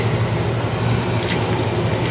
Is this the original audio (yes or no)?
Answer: yes